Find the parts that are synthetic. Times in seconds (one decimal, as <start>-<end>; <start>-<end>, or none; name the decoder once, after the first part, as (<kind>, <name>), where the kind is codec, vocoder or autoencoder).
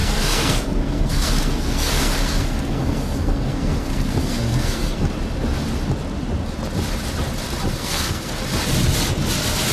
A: 0.0-5.1 (codec, SNAC); 7.7-8.3